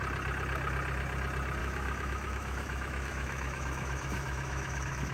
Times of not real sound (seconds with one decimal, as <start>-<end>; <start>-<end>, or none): 1.6-5.1